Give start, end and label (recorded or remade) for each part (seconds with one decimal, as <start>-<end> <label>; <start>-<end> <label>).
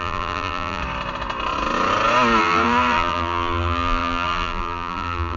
0.0-0.8 remade; 0.8-2.4 recorded; 2.4-5.4 remade